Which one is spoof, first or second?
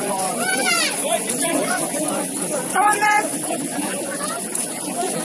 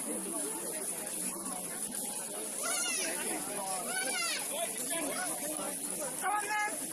first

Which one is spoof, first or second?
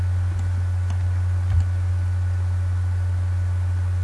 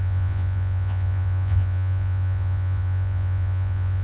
second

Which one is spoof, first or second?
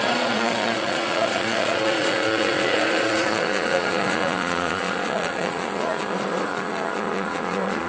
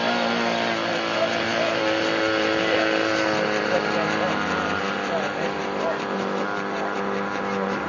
first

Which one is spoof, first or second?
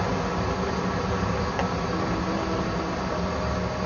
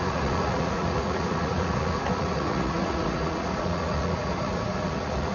second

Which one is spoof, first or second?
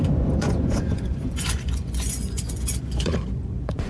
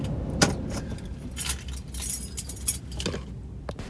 first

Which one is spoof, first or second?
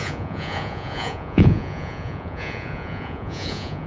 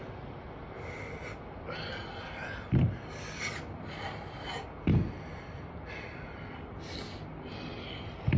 first